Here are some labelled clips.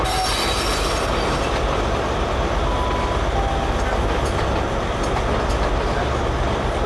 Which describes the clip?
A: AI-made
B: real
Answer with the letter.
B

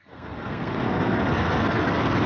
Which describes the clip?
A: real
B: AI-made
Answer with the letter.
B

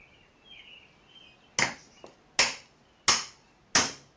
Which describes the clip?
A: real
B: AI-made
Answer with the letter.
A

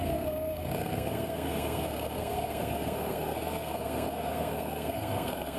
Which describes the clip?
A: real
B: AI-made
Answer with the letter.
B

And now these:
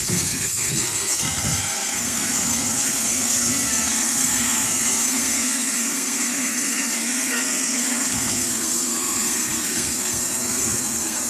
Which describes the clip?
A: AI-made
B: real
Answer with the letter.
A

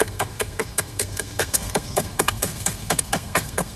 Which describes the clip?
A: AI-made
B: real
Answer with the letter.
A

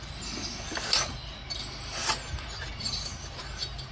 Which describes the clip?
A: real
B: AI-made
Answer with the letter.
A